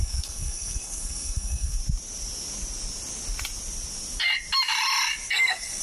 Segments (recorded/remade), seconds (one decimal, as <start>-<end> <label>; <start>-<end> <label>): 0.0-1.8 remade; 1.8-5.3 recorded; 5.3-5.8 remade